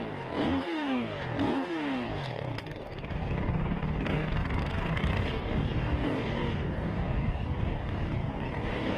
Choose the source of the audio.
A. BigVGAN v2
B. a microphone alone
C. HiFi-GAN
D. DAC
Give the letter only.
D